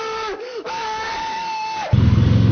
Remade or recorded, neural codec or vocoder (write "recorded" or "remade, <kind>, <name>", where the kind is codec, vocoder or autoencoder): remade, codec, DAC